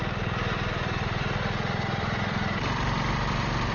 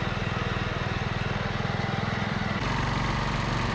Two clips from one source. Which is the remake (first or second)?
first